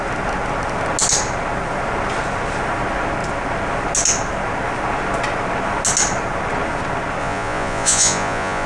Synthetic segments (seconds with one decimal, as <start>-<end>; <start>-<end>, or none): 7.2-8.7